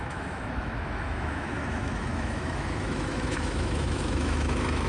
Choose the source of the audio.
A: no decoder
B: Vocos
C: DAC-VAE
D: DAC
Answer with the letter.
C